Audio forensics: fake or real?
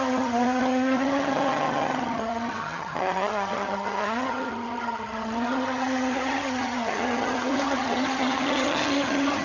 fake